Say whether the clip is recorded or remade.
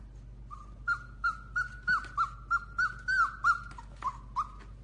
recorded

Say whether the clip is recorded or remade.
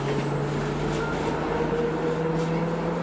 recorded